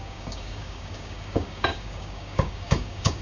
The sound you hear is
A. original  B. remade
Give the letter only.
B